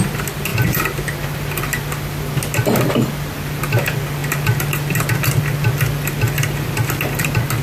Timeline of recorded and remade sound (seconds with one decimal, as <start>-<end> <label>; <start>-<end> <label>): 0.0-7.6 recorded